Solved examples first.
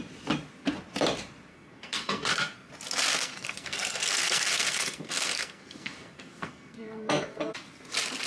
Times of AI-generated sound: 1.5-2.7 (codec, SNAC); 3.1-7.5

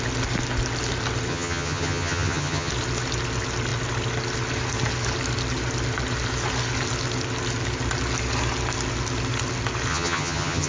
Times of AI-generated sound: 1.3-2.7 (vocoder, HiFi-GAN); 9.9-10.7

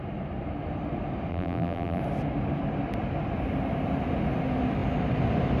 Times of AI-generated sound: 1.3-2.0 (vocoder, BigVGAN v2)

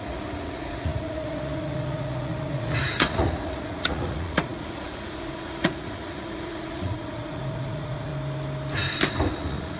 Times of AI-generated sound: 0.0-8.1 (vocoder, Vocos); 9.3-9.8